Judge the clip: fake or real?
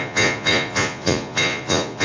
fake